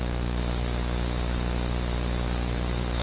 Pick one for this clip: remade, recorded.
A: recorded